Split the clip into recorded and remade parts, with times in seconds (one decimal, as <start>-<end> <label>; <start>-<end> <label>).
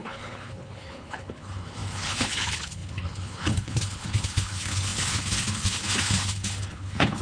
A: 0.0-7.2 remade